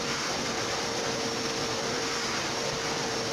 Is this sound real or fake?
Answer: fake